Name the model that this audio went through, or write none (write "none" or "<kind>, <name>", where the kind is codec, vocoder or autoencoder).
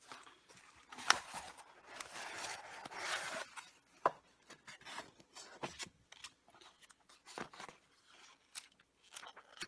none